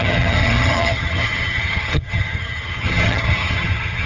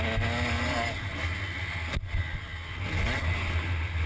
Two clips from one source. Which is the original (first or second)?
second